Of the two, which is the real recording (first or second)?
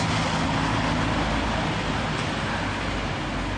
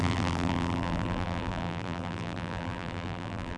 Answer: first